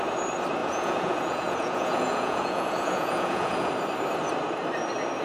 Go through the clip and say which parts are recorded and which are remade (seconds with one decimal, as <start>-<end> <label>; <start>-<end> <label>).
0.0-0.6 recorded; 0.6-3.7 remade; 3.7-5.2 recorded